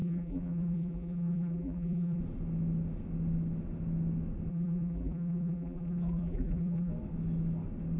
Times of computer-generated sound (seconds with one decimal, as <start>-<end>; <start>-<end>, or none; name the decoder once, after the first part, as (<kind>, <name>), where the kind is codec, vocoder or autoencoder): 0.0-2.2 (vocoder, BigVGAN v2); 4.5-6.9